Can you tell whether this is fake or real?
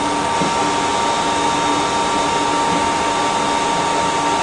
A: real